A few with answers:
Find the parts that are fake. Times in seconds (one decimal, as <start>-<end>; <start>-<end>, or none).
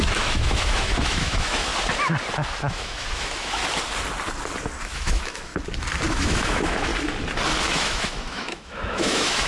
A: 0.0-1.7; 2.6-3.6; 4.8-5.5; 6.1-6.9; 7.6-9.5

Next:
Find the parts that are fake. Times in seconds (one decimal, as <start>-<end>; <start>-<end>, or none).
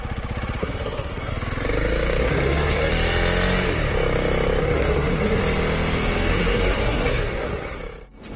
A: 0.6-1.3; 2.2-2.9; 4.6-5.4; 6.3-7.8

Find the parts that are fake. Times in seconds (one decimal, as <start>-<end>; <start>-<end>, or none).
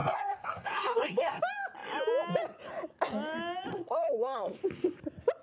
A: 0.0-1.4; 3.7-4.5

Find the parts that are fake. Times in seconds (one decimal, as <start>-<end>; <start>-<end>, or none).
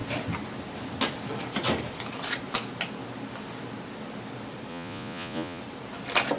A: 4.7-5.6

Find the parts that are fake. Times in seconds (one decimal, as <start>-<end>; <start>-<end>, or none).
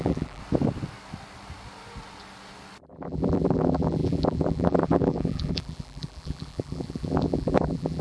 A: 0.0-0.4; 2.8-8.0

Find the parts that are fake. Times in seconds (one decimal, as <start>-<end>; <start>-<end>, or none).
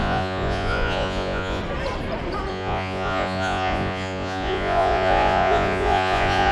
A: 0.0-1.6; 2.5-6.5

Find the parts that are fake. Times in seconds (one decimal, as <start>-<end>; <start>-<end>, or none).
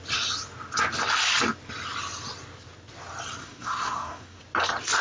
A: 3.4-4.4